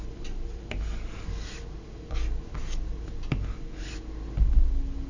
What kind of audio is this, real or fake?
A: real